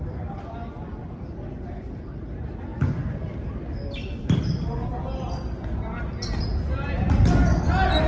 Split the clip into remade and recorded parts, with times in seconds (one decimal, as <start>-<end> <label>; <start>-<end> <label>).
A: 0.0-8.1 recorded